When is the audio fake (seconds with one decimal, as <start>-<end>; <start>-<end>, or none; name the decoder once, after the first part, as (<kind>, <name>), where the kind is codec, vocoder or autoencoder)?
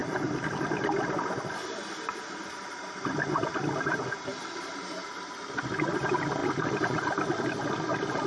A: 0.0-1.0 (vocoder, BigVGAN v2)